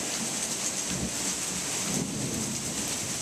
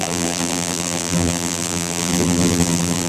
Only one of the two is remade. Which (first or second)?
second